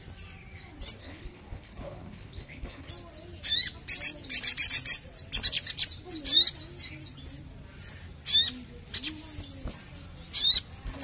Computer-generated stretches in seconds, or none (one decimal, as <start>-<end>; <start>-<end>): 1.0-2.9